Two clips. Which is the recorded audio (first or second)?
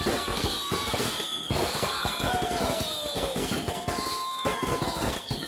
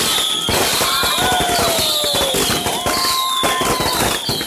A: second